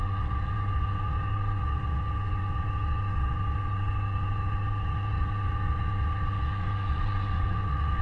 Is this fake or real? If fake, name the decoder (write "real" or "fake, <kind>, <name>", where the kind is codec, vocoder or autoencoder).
fake, vocoder, WaveNeXt